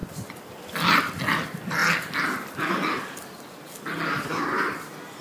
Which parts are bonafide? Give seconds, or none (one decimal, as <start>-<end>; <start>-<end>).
0.0-5.2